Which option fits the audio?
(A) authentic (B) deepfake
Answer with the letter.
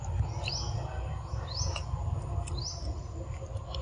A